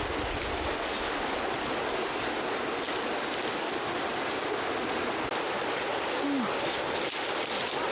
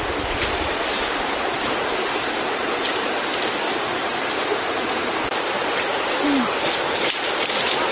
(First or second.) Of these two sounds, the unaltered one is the first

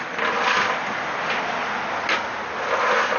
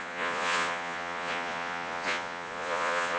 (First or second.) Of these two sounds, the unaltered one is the first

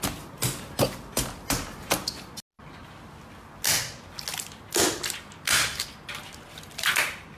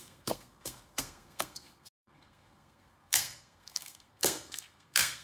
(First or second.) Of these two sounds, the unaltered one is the first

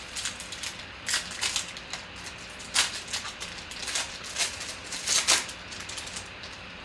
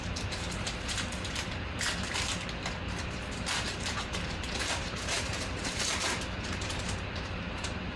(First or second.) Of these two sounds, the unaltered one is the first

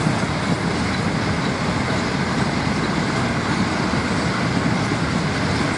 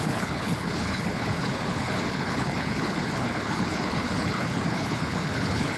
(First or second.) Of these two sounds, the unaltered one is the first